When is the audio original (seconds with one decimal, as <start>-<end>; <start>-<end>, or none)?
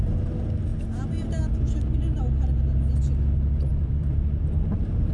0.0-3.7